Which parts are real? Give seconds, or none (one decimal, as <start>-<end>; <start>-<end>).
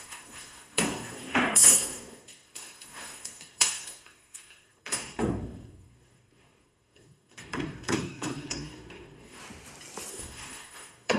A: 9.4-10.1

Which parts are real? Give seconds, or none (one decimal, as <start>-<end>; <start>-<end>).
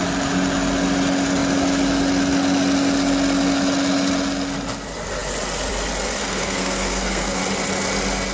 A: 0.0-6.2; 7.4-8.3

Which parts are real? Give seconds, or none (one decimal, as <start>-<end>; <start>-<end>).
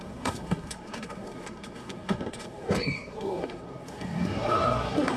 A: none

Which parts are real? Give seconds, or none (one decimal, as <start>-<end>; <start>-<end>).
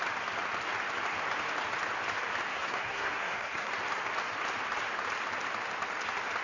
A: 0.0-2.5; 3.7-6.4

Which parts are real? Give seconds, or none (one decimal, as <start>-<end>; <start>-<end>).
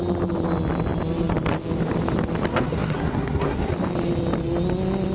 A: 0.0-2.5; 3.7-5.1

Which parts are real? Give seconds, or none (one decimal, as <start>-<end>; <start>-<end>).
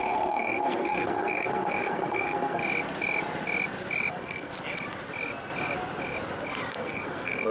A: 2.6-4.1; 4.5-6.7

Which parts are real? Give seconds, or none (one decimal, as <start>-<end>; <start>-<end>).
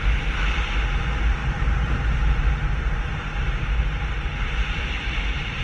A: 0.0-5.6